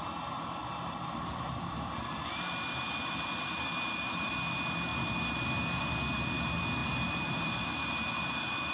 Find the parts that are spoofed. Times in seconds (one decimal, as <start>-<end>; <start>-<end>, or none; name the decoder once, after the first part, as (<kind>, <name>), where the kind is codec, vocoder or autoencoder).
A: 0.6-4.3 (vocoder, BigVGAN v2); 6.8-8.7